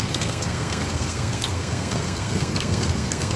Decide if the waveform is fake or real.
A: fake